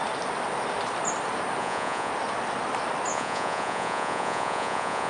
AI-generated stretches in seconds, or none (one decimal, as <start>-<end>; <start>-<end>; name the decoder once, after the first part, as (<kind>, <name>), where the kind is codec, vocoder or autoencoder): 1.6-2.1 (vocoder, Vocos); 3.1-5.1